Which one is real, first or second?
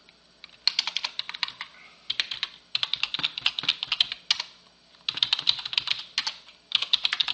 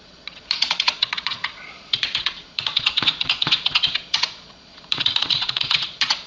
first